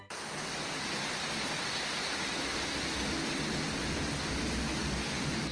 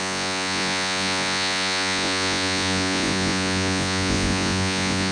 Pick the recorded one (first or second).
first